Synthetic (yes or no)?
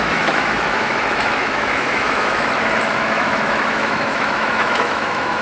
yes